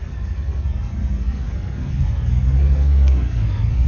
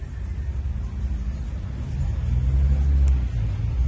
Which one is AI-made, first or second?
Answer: first